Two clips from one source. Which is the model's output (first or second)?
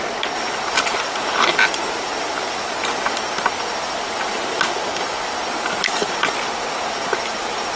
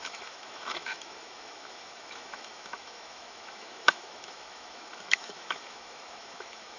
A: second